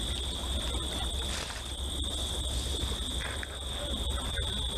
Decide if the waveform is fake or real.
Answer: real